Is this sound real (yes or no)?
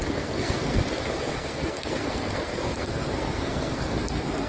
no